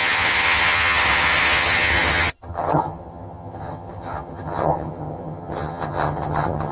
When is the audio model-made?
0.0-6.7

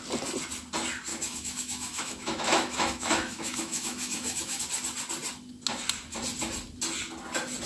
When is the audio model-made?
1.1-4.6

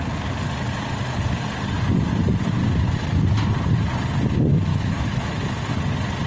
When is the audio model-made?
4.7-5.4

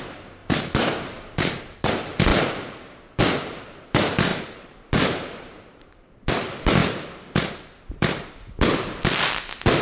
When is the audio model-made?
0.4-1.9; 4.3-6.3